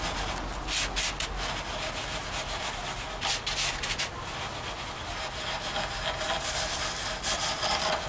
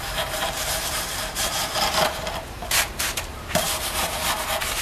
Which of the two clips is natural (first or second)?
first